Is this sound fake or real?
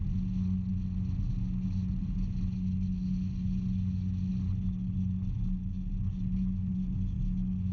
real